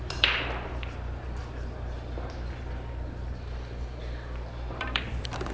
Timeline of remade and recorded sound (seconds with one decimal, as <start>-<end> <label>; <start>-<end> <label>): 0.0-1.4 remade; 1.4-4.7 recorded; 4.7-5.5 remade